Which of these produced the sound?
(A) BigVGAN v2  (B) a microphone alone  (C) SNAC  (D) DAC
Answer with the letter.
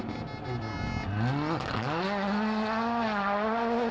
B